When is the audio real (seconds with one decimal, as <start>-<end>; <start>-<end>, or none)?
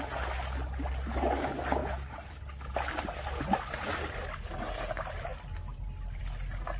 0.0-6.8